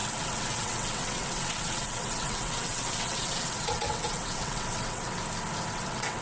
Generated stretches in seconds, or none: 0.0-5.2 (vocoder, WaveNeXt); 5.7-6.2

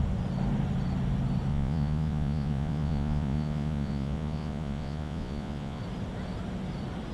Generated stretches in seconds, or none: 1.5-5.8 (vocoder, Vocos)

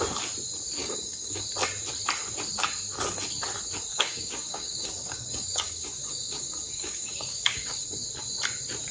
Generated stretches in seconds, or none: 0.8-1.4 (codec, DAC); 3.9-7.9

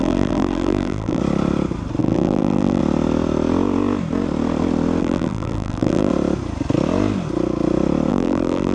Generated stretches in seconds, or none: 0.0-1.2 (vocoder, BigVGAN v2); 2.0-2.8; 5.0-6.1; 8.1-8.7

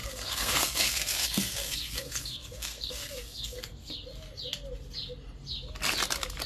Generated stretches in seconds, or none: 0.0-3.9 (codec, SNAC)

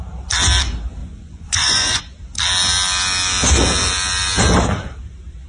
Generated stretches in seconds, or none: 1.0-2.0 (vocoder, Vocos)

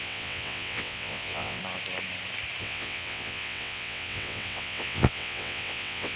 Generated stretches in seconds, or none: 0.0-1.6 (vocoder, WaveNeXt); 2.6-6.2

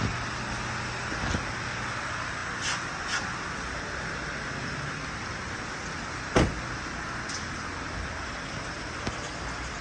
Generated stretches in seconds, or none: none